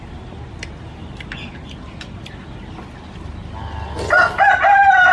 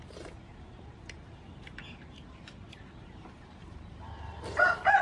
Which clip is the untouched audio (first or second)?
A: first